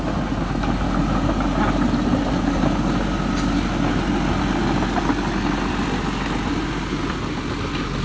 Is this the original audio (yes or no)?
yes